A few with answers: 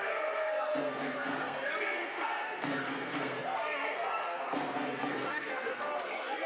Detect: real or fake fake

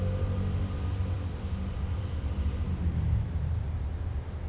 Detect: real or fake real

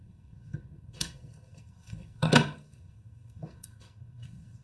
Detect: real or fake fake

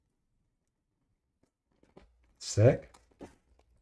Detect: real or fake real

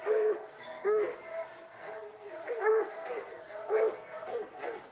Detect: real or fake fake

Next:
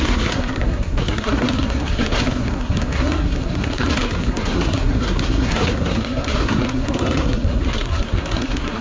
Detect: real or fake fake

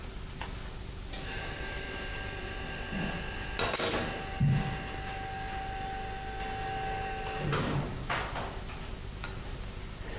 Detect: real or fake real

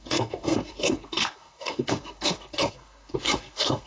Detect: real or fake fake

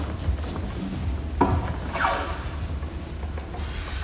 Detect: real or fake real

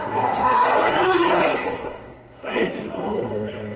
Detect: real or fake fake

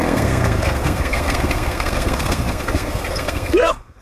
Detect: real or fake fake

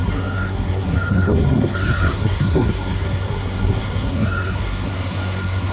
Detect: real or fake fake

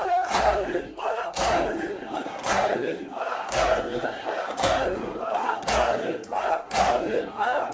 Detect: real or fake fake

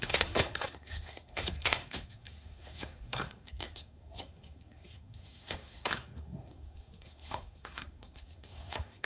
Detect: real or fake fake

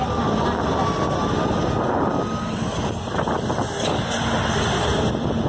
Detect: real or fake real